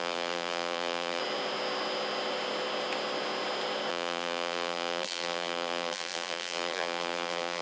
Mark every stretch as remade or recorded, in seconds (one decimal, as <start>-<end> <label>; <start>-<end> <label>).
0.0-1.2 remade; 1.2-3.9 recorded; 3.9-7.6 remade